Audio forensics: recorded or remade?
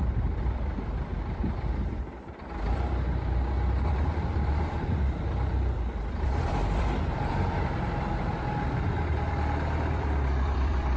remade